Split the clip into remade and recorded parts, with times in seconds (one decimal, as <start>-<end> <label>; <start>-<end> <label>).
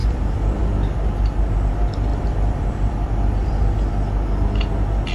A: 0.0-0.7 remade; 0.7-2.1 recorded; 2.1-3.9 remade; 3.9-5.1 recorded